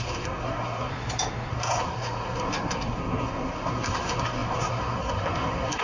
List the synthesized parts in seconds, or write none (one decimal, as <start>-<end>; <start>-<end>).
0.0-0.9; 1.5-5.8